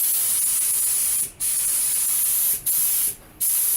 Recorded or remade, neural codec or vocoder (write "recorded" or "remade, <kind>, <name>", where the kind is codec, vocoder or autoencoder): recorded